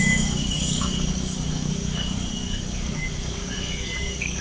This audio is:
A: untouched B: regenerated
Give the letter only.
B